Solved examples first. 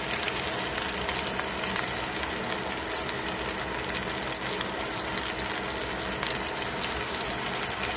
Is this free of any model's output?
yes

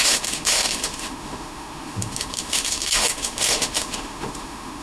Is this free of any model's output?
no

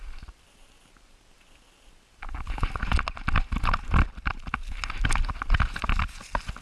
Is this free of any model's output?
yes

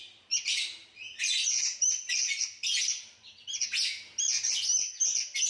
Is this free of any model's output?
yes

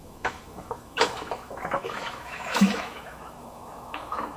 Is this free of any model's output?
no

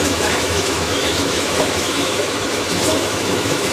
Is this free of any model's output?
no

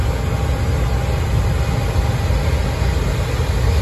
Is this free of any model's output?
yes